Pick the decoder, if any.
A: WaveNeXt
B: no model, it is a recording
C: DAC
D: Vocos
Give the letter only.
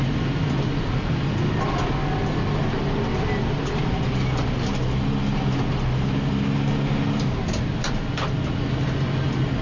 B